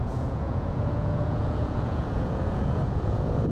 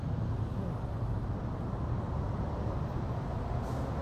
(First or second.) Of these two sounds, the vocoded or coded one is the first